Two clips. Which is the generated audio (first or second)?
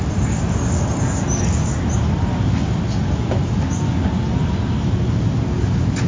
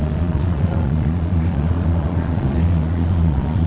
second